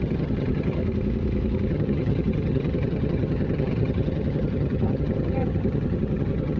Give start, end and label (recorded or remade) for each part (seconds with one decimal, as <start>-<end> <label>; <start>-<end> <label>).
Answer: 0.0-0.8 remade; 0.8-1.7 recorded; 1.7-6.6 remade